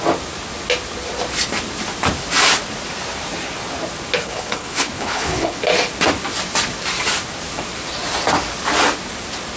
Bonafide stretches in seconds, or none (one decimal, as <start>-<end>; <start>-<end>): 0.0-4.2; 5.6-9.6